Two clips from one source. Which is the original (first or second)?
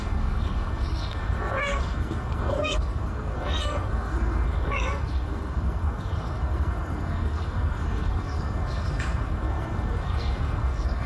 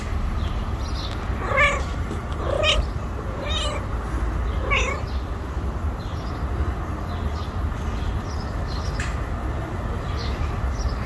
second